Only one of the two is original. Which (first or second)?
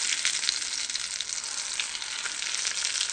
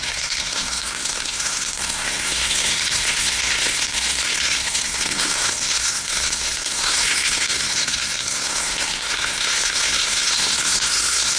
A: first